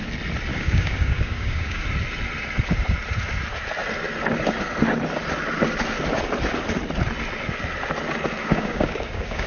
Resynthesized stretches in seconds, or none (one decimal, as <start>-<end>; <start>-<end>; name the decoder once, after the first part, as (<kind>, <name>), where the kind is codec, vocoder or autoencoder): 0.5-1.8 (codec, DAC); 8.4-9.5